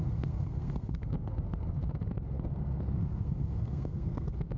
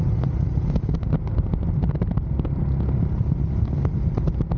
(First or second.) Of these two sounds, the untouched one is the second